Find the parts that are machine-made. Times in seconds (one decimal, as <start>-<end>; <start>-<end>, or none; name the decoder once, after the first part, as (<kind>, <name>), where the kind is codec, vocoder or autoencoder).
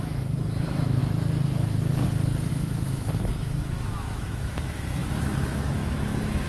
0.0-1.0 (autoencoder, DAC-VAE); 2.5-6.5